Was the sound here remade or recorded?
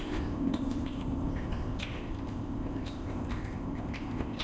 remade